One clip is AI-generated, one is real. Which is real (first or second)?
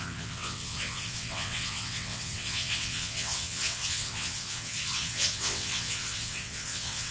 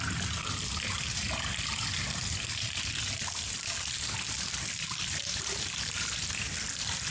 second